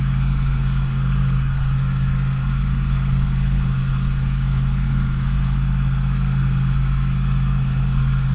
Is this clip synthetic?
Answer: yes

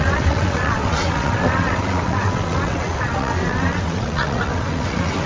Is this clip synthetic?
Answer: yes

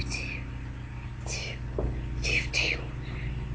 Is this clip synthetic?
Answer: no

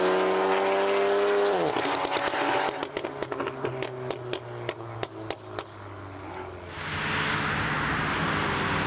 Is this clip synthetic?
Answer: no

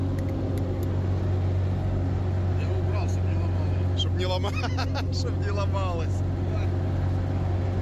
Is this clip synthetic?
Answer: no